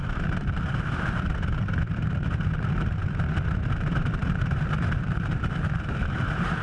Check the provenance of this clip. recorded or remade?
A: remade